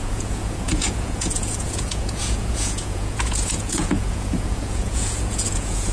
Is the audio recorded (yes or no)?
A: no